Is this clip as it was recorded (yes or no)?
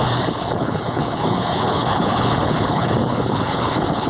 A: no